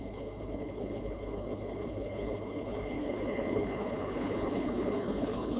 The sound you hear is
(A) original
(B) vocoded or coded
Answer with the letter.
B